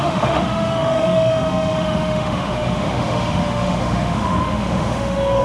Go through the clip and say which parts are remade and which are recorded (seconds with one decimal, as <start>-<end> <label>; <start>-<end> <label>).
0.0-5.4 remade